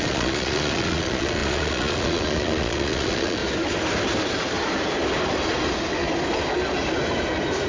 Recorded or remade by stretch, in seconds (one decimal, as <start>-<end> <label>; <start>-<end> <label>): 0.0-3.4 remade; 3.4-7.7 recorded